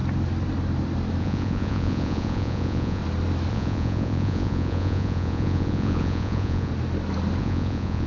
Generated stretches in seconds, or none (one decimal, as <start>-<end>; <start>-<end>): 1.2-3.0; 3.5-6.7; 7.4-8.1